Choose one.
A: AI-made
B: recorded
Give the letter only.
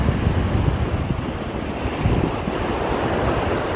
B